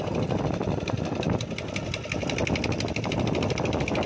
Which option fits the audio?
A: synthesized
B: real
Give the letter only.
A